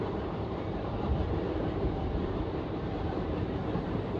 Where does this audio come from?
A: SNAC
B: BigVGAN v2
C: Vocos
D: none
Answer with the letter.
B